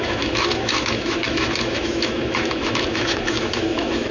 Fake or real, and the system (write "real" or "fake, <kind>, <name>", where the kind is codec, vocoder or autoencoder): fake, autoencoder, DAC-VAE